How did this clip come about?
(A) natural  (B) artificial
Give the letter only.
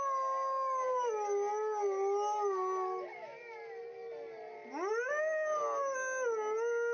A